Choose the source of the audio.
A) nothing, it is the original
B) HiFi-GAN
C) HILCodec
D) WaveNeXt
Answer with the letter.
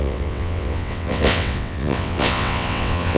D